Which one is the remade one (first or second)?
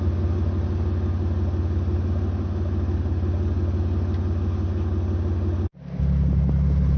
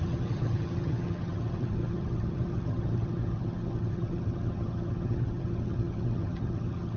second